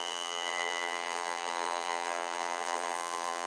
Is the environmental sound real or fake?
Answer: fake